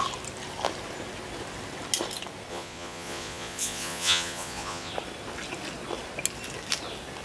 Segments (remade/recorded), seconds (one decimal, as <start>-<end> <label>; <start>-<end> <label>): 0.0-2.5 recorded; 2.5-4.9 remade; 4.9-7.2 recorded